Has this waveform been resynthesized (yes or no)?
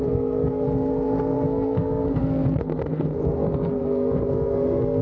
yes